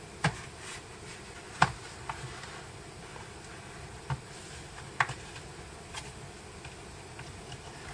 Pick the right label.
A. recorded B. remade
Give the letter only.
A